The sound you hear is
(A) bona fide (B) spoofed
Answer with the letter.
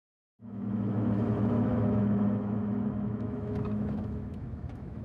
B